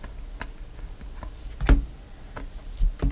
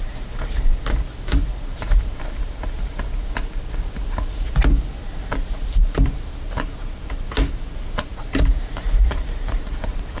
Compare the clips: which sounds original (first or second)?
first